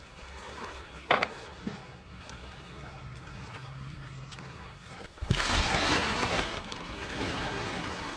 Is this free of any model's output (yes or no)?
no